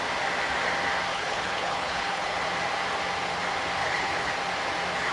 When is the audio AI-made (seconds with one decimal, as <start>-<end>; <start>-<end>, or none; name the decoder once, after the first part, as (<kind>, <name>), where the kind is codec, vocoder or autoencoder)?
1.1-2.4 (codec, HILCodec); 3.8-4.3